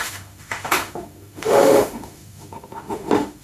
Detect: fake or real fake